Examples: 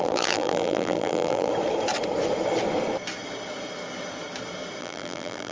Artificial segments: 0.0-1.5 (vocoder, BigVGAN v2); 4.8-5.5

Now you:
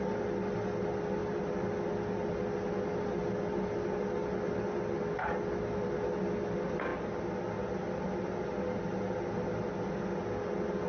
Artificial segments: 1.2-1.7 (vocoder, BigVGAN v2)

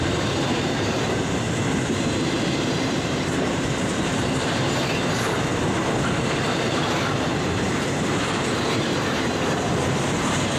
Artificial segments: 0.0-5.5 (vocoder, BigVGAN v2); 6.2-10.6

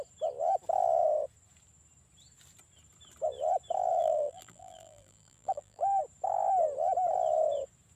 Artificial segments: 3.9-6.0 (vocoder, BigVGAN v2)

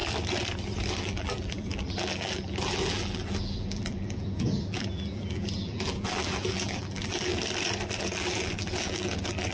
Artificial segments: 1.0-7.3 (vocoder, BigVGAN v2); 8.0-9.5

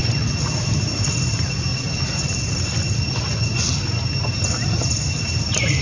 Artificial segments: 0.6-1.7 (vocoder, BigVGAN v2); 5.2-5.8

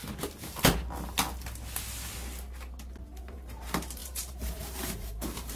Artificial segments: 3.2-5.6 (vocoder, BigVGAN v2)